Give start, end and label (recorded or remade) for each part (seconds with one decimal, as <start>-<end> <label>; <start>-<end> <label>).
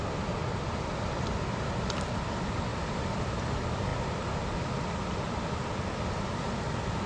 0.0-0.4 recorded; 0.4-1.4 remade; 1.4-2.7 recorded; 2.7-3.2 remade; 3.2-3.9 recorded; 3.9-5.8 remade; 5.8-7.1 recorded